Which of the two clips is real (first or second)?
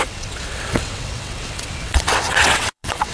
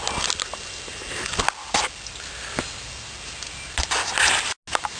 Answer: second